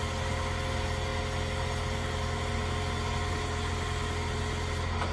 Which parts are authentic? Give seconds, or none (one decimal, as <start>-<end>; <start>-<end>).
0.0-5.1